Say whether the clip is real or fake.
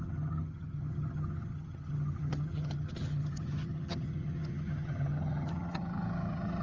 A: fake